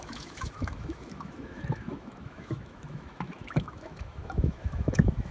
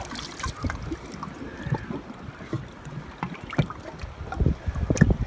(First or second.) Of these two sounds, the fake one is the first